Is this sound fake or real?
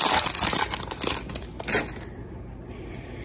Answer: real